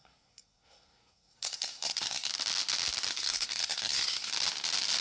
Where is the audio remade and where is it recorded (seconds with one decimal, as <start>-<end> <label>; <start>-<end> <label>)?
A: 0.0-2.3 remade; 2.3-3.1 recorded; 3.1-4.3 remade; 4.3-5.0 recorded